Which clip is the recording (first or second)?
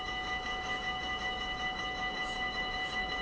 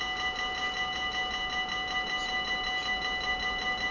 second